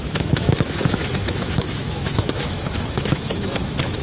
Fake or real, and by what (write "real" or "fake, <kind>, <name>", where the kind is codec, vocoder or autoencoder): fake, autoencoder, DAC-VAE